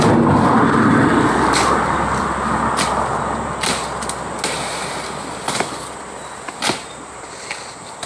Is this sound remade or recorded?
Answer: recorded